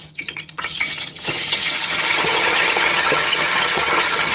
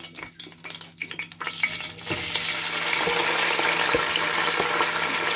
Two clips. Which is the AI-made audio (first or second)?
first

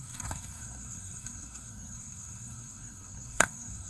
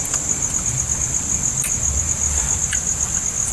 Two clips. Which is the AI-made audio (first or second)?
first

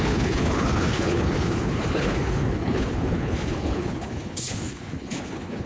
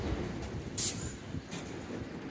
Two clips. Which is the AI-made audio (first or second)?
first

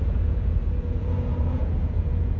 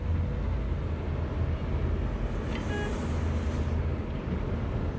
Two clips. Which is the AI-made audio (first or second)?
first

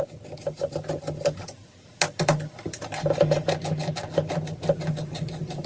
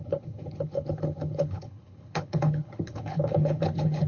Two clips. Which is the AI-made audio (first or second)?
second